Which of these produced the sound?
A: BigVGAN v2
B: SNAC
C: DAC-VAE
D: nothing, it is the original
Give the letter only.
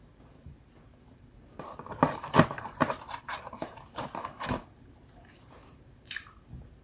A